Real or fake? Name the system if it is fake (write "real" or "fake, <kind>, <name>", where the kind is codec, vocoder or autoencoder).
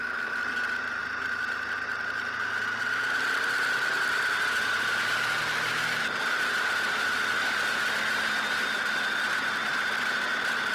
real